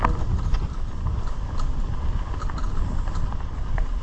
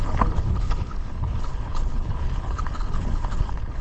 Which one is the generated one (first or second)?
second